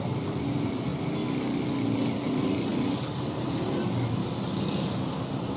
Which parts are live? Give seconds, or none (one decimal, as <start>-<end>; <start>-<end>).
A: 0.9-1.6; 2.7-3.7; 4.2-4.9

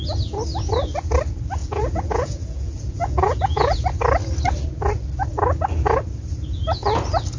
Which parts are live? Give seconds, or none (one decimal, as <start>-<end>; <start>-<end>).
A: 0.0-1.6; 3.8-7.4

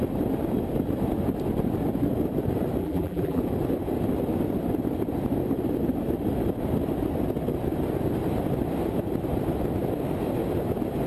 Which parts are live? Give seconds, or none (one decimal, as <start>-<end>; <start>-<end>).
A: 0.0-2.8; 3.4-11.1